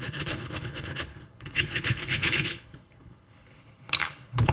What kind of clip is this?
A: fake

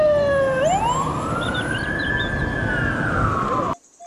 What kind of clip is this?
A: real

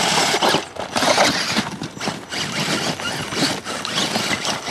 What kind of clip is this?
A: real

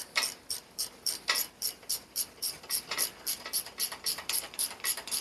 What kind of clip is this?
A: fake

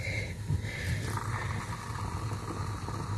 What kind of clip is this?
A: real